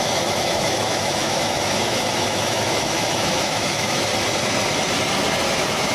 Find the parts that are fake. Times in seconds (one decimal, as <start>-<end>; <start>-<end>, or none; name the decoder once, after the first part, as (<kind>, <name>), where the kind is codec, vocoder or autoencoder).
0.0-4.1 (autoencoder, DAC-VAE); 5.5-5.9